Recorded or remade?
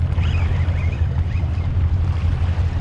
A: recorded